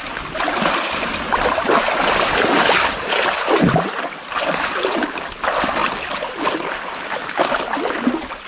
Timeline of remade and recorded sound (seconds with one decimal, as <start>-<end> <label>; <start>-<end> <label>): 0.0-8.5 recorded